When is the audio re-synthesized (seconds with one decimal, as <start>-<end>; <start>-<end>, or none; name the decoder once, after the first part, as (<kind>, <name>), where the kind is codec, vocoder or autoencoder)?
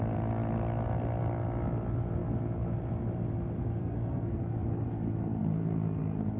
3.8-4.4 (codec, SNAC)